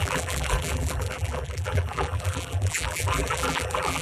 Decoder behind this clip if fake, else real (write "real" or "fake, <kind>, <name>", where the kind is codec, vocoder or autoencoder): fake, vocoder, BigVGAN v2